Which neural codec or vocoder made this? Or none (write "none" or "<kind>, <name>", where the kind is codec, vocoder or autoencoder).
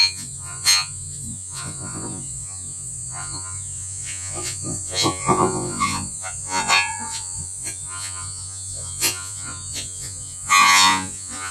vocoder, Vocos